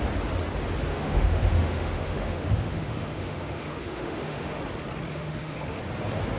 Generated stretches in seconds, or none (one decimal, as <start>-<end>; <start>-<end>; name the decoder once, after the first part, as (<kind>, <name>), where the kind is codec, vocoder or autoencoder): 0.9-4.6 (autoencoder, DAC-VAE); 5.1-5.8